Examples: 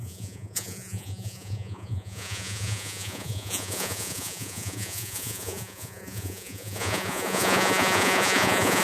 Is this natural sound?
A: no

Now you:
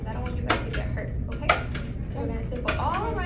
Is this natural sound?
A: yes